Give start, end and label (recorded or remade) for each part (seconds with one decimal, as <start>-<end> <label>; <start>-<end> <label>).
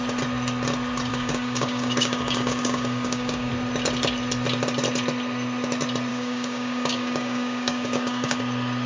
0.0-1.1 recorded; 1.1-3.5 remade; 3.5-6.1 recorded; 6.1-8.4 remade; 8.4-8.9 recorded